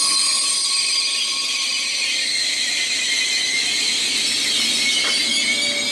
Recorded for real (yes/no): yes